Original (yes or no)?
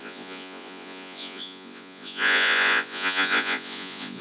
no